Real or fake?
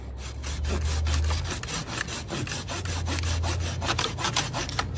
real